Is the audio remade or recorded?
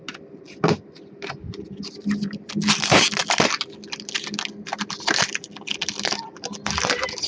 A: recorded